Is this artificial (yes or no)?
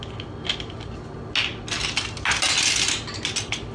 no